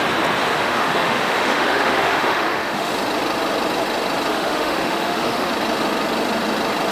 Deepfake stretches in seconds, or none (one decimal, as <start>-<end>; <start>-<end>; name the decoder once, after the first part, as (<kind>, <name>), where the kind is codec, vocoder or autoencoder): 0.5-2.9 (autoencoder, DAC-VAE); 4.3-5.5